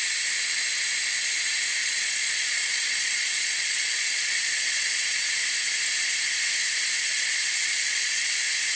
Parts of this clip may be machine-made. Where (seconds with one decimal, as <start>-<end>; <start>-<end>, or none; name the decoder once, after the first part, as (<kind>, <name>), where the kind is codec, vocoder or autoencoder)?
1.8-5.3 (vocoder, Vocos); 7.1-8.3